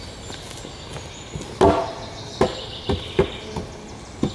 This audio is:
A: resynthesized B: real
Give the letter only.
B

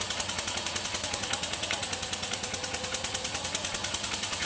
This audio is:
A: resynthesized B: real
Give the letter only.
A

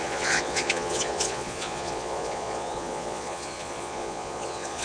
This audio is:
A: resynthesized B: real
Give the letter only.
A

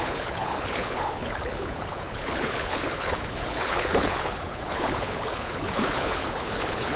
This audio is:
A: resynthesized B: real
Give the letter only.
A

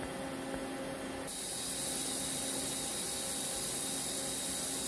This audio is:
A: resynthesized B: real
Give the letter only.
B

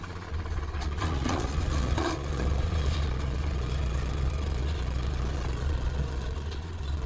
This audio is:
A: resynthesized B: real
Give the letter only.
A